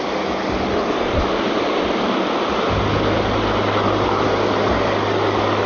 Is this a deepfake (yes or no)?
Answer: no